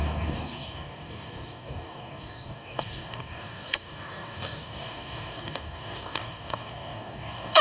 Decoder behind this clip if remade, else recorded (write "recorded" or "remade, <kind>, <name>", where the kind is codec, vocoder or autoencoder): remade, codec, DAC